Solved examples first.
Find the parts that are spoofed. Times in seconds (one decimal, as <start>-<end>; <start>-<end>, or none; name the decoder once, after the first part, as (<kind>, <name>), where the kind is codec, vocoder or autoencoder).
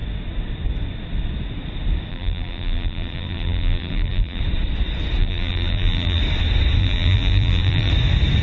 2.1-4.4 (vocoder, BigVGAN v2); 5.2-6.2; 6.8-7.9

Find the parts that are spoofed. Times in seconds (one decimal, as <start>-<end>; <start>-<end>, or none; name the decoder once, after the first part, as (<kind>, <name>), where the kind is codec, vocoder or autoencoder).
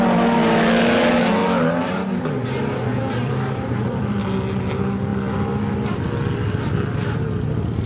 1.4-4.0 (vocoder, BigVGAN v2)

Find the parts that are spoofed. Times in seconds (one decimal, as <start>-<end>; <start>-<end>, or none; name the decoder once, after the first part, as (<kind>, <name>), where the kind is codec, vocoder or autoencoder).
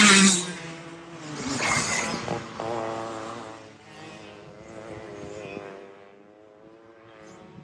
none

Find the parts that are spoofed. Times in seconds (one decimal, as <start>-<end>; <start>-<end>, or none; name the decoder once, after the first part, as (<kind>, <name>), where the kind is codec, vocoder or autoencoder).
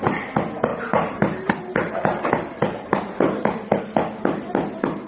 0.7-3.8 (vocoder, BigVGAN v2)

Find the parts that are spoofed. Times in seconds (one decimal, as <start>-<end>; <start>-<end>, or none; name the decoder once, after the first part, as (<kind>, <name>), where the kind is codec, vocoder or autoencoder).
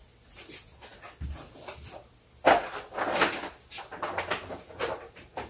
4.7-5.5 (vocoder, BigVGAN v2)